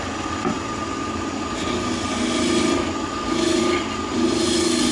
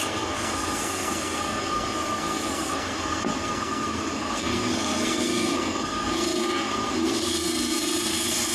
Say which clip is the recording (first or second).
first